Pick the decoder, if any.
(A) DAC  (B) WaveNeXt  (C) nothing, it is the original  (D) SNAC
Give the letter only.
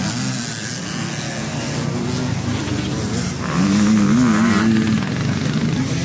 C